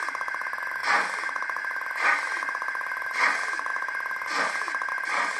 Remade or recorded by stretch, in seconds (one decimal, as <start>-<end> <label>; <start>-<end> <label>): 0.0-0.8 recorded; 0.8-1.6 remade; 1.6-5.4 recorded